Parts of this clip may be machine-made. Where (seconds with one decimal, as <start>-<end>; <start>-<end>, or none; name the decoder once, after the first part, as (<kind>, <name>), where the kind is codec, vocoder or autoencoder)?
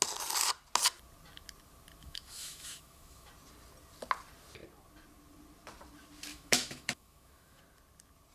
2.0-3.3 (autoencoder, DAC-VAE); 6.3-7.6